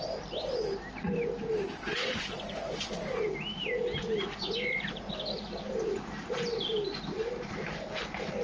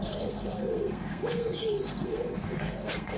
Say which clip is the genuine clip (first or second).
first